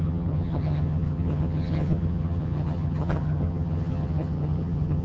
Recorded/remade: remade